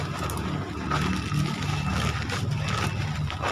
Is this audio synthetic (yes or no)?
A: no